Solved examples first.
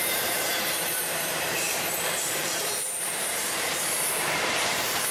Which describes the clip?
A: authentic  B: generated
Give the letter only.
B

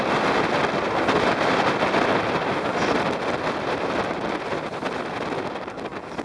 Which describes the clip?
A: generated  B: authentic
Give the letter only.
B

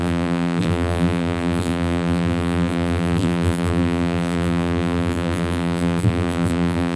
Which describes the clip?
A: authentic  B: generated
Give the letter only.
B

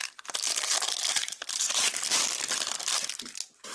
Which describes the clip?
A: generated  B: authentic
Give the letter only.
A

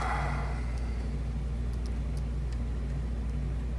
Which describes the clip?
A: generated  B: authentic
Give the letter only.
B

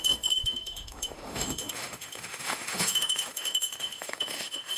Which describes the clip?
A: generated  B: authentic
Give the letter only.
A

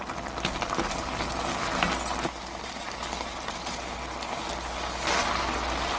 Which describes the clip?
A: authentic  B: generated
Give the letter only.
A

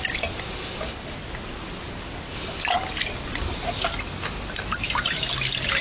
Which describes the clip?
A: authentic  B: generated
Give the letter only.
A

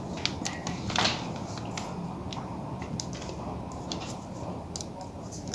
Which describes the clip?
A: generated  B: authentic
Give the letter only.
B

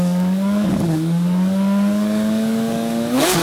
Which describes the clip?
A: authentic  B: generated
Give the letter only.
B